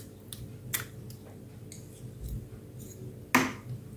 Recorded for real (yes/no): yes